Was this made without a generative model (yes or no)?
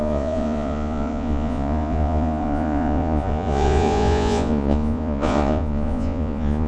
no